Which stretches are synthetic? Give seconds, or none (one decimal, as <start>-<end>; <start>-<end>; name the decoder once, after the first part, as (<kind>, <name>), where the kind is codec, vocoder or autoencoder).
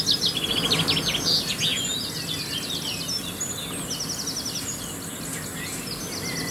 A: none